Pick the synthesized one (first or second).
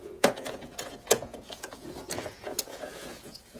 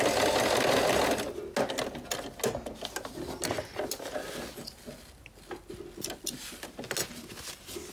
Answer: first